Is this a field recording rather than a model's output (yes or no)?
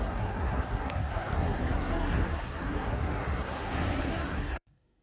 no